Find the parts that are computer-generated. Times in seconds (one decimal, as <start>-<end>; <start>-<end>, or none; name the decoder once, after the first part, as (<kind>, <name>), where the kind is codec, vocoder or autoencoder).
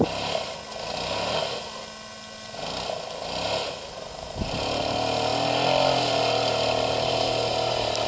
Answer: none